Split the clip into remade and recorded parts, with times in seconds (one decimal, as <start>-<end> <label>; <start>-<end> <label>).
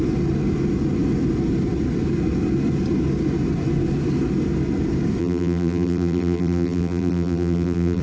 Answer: 0.0-5.2 recorded; 5.2-8.0 remade